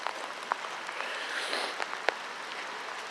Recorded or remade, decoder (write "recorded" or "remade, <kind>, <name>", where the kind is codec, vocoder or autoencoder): recorded